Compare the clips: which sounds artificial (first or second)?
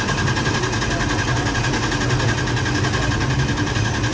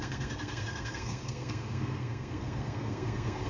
second